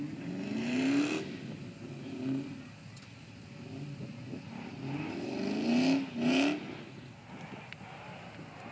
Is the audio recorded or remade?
recorded